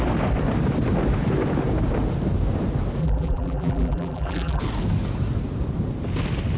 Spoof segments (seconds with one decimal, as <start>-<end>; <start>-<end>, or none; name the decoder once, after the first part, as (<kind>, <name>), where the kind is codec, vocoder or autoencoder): 3.0-4.6 (vocoder, BigVGAN v2)